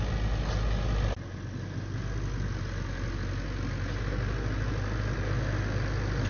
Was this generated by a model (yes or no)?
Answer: no